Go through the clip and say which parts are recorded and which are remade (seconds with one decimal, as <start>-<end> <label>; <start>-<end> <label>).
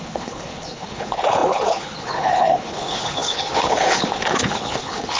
0.0-5.2 remade